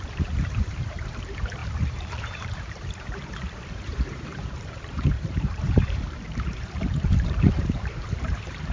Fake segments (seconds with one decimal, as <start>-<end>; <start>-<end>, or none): 0.0-8.7